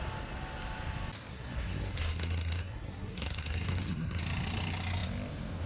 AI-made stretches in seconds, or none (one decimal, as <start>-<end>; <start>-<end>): 1.3-4.2

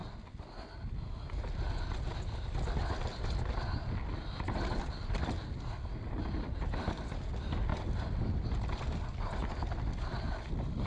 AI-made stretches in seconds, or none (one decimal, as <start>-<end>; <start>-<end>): none

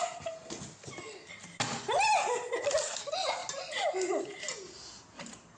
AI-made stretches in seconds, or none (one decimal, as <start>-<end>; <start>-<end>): 0.0-0.6

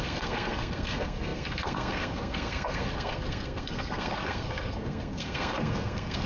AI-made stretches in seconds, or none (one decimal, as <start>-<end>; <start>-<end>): 0.0-6.3